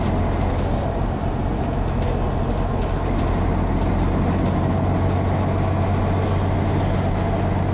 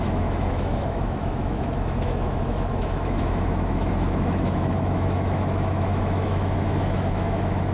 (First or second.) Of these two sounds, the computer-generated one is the second